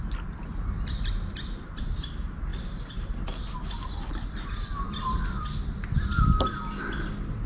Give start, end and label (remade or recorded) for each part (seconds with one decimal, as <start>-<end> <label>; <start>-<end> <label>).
0.0-7.5 recorded